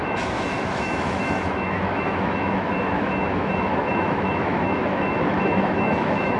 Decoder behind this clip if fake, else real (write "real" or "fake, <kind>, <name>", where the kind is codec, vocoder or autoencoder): fake, autoencoder, DAC-VAE